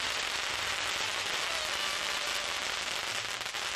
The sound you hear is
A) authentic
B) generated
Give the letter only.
A